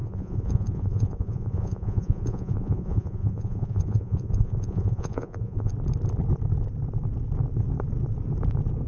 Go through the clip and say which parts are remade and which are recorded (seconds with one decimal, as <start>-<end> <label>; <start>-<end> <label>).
0.0-5.7 remade; 5.7-8.9 recorded